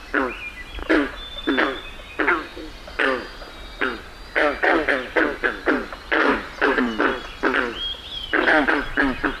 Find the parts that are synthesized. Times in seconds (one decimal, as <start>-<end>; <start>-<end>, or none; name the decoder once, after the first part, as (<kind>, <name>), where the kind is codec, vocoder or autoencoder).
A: none